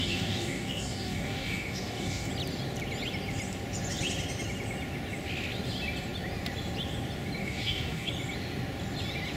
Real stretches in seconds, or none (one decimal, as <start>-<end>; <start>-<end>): 2.3-7.4; 8.1-9.4